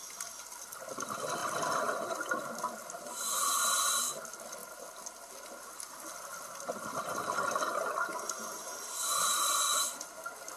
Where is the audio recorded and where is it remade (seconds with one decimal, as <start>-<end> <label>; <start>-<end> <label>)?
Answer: 0.0-1.4 recorded; 1.4-2.0 remade; 2.0-8.1 recorded; 8.1-10.1 remade; 10.1-10.6 recorded